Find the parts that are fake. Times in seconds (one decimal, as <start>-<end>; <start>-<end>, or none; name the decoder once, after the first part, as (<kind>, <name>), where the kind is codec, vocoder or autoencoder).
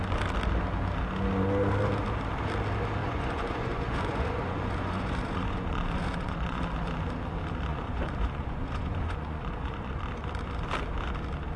3.0-6.6 (vocoder, Vocos); 7.7-10.0